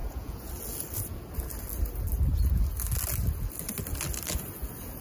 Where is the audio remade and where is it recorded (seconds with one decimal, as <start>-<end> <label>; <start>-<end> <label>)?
0.0-0.5 remade; 0.5-5.0 recorded